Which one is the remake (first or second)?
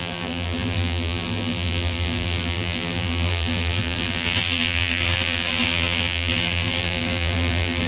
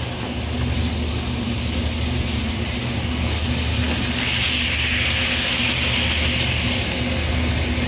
first